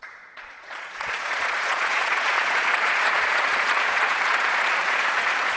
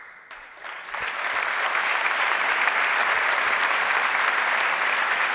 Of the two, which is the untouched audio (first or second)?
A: second